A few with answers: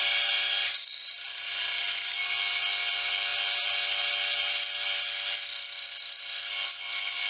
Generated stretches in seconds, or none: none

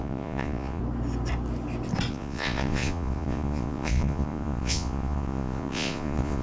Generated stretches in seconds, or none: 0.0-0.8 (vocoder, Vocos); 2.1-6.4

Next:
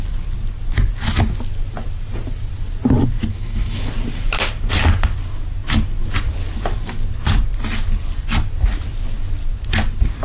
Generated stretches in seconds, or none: 3.3-3.9 (autoencoder, DAC-VAE)

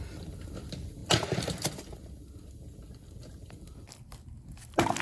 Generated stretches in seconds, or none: none

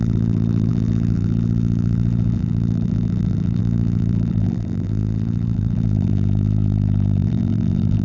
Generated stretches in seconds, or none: 0.0-8.0 (vocoder, BigVGAN v2)